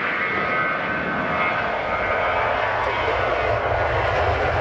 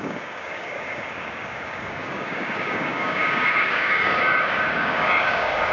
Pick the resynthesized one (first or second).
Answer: second